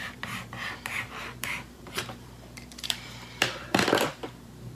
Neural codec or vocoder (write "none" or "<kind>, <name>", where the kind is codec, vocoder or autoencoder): vocoder, BigVGAN v2